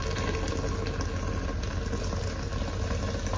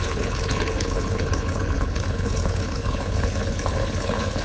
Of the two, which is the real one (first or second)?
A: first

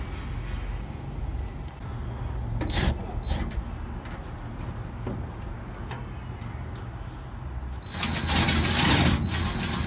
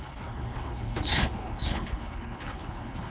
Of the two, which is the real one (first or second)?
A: first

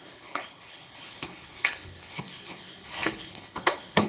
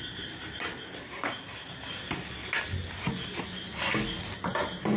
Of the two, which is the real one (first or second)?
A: second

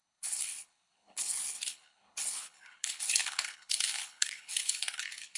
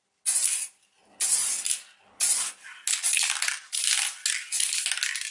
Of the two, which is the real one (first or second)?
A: second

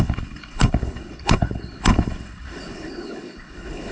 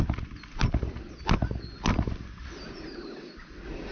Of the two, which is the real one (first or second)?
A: second